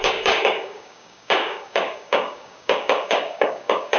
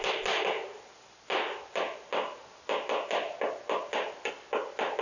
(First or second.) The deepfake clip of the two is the first